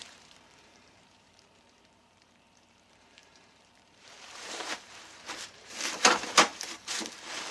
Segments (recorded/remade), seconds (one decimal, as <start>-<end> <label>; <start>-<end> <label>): 0.0-7.5 remade